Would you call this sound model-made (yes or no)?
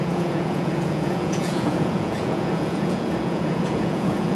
yes